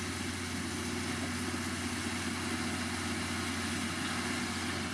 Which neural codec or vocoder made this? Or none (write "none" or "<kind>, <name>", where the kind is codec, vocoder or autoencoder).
none